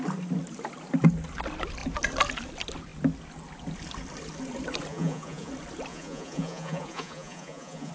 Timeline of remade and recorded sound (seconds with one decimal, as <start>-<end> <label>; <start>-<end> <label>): 0.0-4.9 recorded; 4.9-5.5 remade; 5.5-5.9 recorded; 5.9-7.9 remade